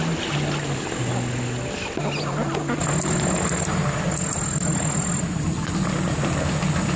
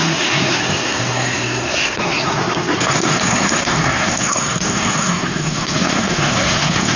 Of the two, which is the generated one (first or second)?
second